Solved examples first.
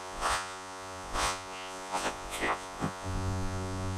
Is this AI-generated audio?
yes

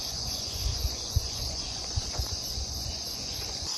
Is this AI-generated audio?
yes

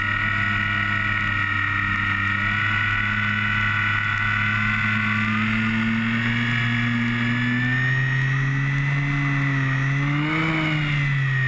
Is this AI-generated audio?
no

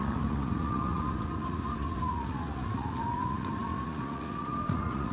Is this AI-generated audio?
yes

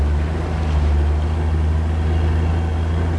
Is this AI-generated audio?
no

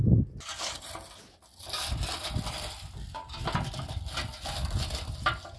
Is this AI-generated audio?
no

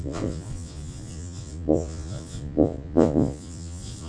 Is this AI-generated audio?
yes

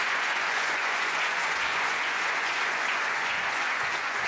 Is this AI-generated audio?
yes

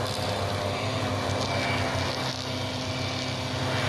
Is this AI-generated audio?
no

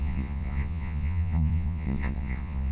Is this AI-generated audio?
yes